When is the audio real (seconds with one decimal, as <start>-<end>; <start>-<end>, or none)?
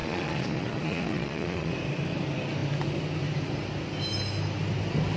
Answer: 1.7-5.2